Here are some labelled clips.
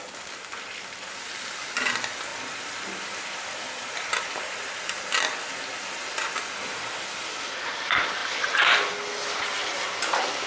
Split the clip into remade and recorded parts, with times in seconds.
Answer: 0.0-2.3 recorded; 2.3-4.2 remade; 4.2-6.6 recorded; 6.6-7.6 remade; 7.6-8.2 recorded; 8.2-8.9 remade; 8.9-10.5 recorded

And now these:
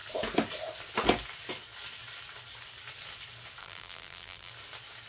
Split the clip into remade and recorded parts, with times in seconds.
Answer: 0.0-3.6 recorded; 3.6-4.5 remade; 4.5-5.1 recorded